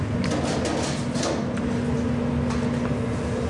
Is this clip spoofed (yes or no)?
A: no